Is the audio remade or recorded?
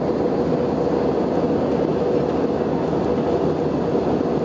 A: recorded